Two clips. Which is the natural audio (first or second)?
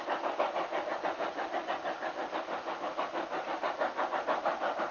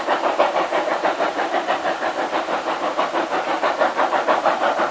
first